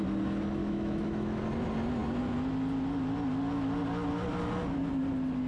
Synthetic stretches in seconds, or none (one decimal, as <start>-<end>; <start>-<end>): 0.6-1.4